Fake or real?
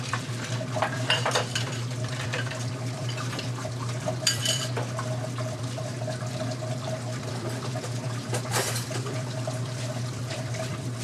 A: fake